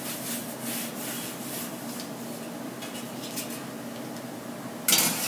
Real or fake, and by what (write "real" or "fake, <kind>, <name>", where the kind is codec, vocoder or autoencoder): real